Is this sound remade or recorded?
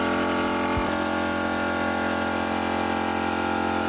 recorded